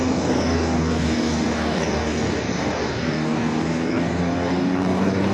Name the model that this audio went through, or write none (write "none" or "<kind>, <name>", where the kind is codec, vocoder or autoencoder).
codec, DAC